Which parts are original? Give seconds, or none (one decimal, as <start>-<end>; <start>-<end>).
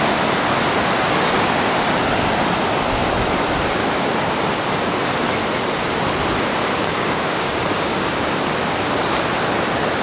0.0-6.9; 8.3-10.0